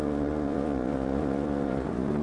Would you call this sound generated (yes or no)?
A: yes